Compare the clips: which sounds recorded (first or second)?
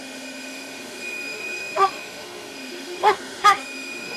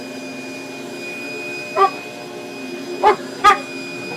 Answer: second